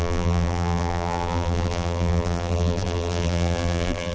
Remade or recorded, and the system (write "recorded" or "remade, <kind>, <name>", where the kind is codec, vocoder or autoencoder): remade, vocoder, BigVGAN v2